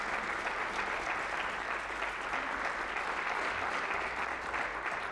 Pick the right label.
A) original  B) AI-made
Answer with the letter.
A